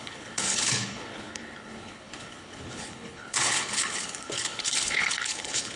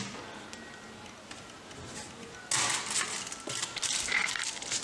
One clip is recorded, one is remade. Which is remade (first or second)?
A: first